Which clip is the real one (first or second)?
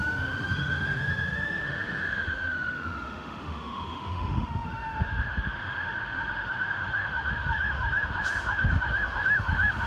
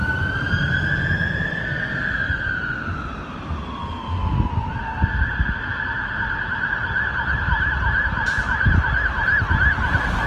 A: second